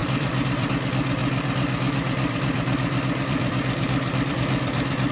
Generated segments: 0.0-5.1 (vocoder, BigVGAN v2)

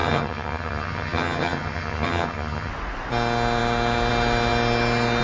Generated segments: 0.0-2.7 (vocoder, HiFi-GAN)

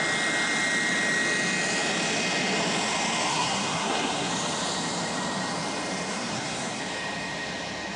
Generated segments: 3.3-4.3 (codec, SNAC); 6.1-6.8

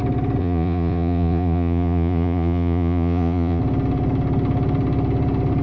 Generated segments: 0.4-3.6 (vocoder, Vocos)

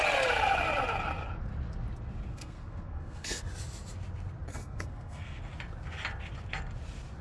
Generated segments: 2.3-3.4 (codec, SNAC); 4.5-5.4

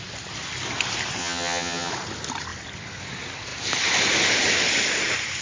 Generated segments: 1.2-1.9 (vocoder, HiFi-GAN)

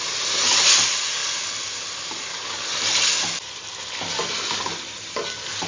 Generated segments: none

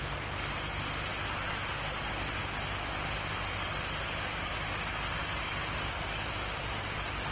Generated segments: none